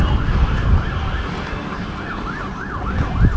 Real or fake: real